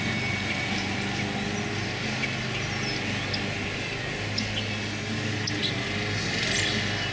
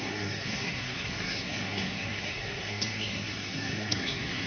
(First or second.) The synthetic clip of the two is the second